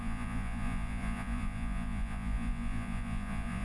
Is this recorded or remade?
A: remade